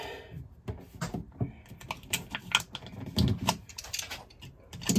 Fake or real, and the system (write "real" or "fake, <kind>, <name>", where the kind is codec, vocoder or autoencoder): real